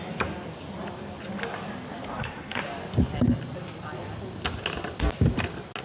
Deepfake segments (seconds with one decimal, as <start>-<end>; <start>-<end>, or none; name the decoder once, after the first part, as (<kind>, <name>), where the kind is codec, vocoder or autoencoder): 2.1-2.6 (codec, SNAC)